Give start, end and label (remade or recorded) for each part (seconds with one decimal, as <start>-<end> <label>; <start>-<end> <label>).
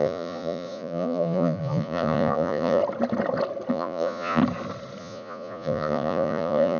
0.0-2.8 remade; 2.8-3.7 recorded; 3.7-4.4 remade; 4.4-5.0 recorded; 5.0-6.8 remade